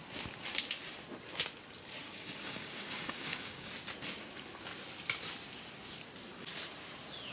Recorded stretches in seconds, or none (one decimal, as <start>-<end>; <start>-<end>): 0.0-2.1; 3.7-7.3